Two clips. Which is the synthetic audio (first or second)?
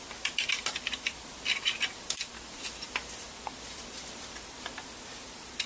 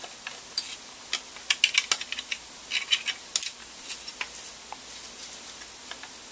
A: first